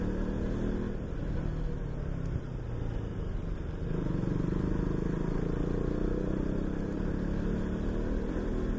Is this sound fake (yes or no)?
no